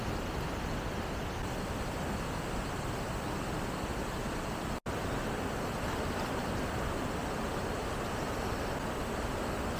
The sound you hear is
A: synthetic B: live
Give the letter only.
B